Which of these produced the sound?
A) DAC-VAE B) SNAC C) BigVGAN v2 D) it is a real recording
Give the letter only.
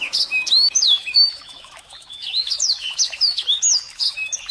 A